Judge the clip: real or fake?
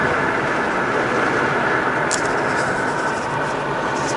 real